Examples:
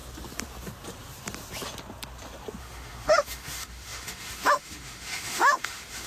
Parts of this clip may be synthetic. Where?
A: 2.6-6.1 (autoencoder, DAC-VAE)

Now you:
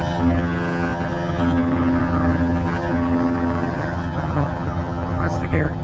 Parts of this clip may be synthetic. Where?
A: 0.0-5.8 (vocoder, HiFi-GAN)

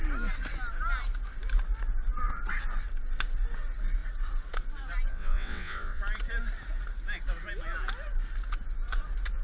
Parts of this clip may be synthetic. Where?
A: 5.1-6.0 (vocoder, WaveNeXt)

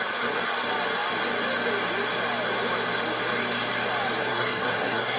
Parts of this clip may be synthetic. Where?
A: 4.2-5.2 (codec, SNAC)